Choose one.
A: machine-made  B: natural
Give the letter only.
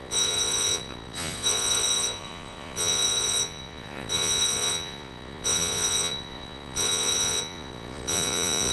A